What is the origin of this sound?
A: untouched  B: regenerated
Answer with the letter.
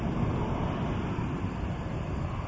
A